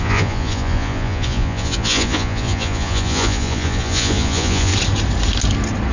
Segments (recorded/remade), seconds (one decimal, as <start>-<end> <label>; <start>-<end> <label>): 0.0-4.7 remade; 4.7-5.9 recorded